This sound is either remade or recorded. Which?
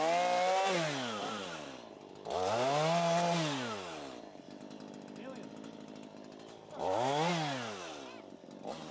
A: recorded